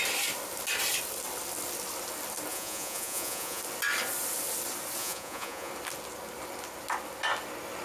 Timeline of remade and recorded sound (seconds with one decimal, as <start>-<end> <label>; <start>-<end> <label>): 0.0-2.5 recorded; 2.5-3.6 remade; 3.6-5.0 recorded; 5.0-5.7 remade; 5.7-7.8 recorded